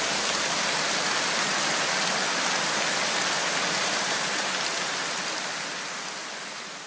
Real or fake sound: real